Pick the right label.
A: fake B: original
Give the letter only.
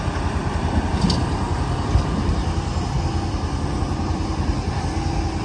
B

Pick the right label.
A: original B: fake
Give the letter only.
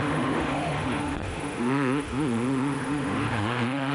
B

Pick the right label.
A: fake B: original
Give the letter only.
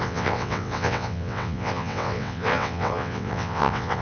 A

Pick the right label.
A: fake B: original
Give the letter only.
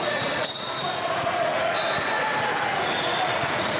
A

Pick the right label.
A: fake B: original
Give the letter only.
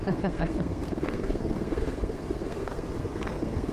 A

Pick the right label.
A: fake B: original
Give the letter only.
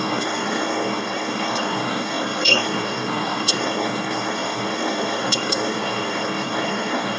A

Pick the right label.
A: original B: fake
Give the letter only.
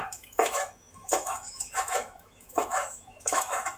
B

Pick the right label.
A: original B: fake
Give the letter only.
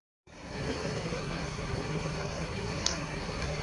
B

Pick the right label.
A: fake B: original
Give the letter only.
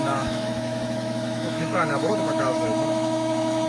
A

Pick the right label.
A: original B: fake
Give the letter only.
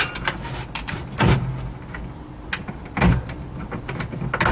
A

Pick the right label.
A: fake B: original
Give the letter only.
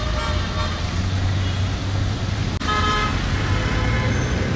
B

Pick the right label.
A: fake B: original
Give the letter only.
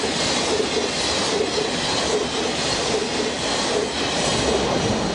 B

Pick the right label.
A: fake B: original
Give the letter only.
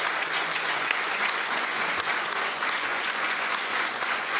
A